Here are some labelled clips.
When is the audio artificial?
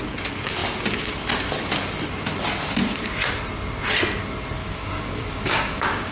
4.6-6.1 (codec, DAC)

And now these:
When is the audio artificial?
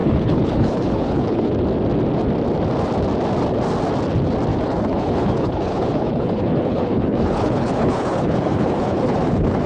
0.0-1.5 (codec, HILCodec); 4.5-9.7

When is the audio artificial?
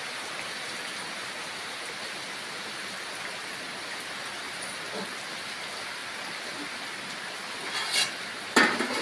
none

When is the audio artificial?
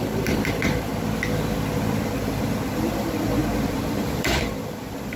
0.0-0.9 (vocoder, BigVGAN v2); 2.7-3.4; 4.0-5.2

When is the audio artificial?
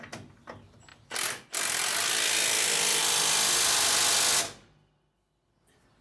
none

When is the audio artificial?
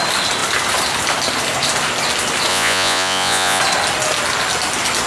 2.5-3.6 (vocoder, Vocos)